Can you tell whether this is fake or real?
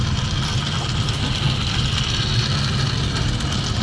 fake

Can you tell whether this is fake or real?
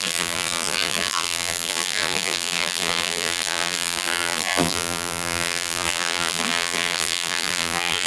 fake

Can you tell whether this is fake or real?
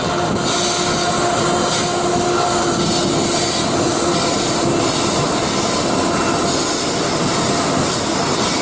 real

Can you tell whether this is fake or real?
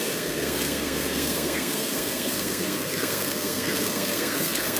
fake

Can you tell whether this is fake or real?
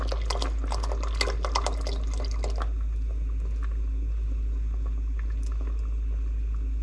real